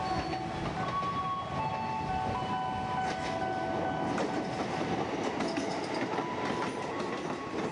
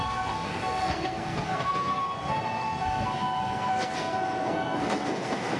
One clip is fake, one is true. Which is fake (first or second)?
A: second